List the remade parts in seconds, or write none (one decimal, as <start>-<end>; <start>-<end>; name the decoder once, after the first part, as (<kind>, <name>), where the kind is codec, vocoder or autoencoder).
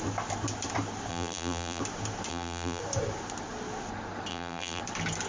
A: 1.1-1.8 (vocoder, BigVGAN v2); 2.3-2.8; 4.3-4.8